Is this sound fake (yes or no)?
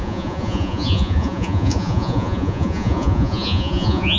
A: yes